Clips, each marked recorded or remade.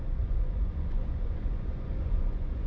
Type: remade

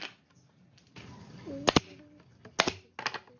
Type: recorded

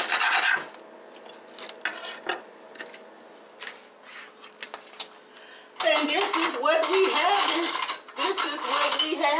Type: recorded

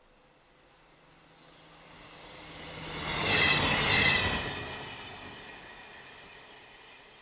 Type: recorded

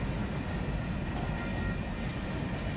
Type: recorded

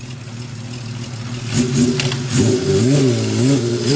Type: recorded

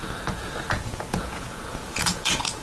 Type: remade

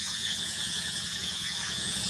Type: remade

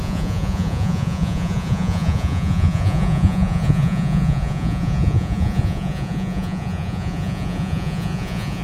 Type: remade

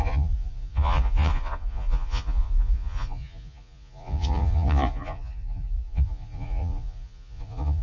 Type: remade